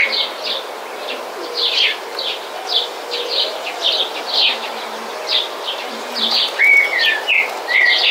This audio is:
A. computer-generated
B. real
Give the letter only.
B